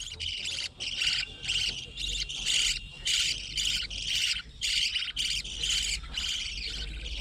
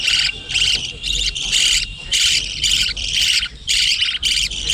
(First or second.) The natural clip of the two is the first